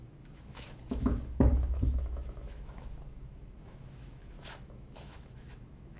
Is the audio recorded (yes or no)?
no